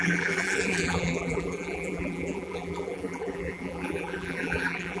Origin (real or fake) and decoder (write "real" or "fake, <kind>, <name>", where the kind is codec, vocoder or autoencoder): fake, vocoder, BigVGAN v2